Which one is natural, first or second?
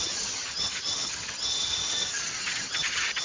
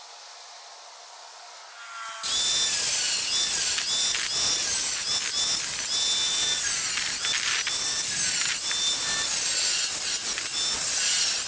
second